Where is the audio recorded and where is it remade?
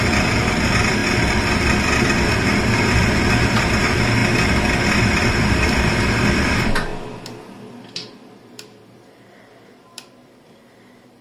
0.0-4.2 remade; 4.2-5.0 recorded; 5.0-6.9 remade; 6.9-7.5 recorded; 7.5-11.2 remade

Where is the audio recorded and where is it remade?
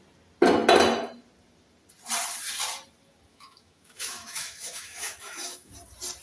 0.0-3.3 recorded; 3.3-5.7 remade; 5.7-6.2 recorded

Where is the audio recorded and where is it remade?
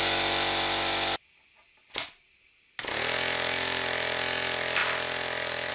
0.0-5.7 recorded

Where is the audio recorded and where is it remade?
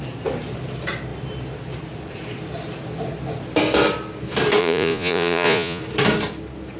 0.0-4.6 recorded; 4.6-5.8 remade; 5.8-6.8 recorded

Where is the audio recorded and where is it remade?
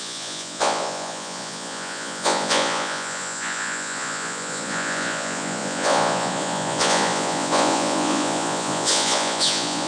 0.0-9.9 remade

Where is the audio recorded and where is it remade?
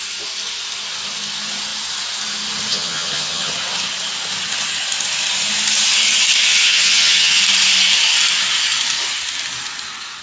0.0-2.7 recorded; 2.7-3.5 remade; 3.5-6.5 recorded; 6.5-7.4 remade; 7.4-10.2 recorded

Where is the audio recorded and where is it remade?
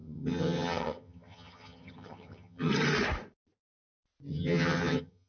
0.0-2.7 remade; 2.7-4.3 recorded; 4.3-5.3 remade